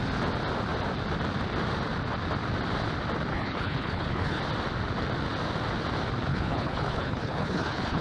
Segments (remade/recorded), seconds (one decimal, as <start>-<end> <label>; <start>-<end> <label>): 0.0-3.3 recorded; 3.3-4.4 remade; 4.4-6.3 recorded; 6.3-8.0 remade